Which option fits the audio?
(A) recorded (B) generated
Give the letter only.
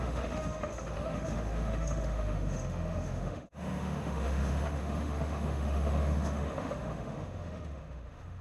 B